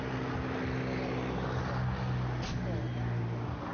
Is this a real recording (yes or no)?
yes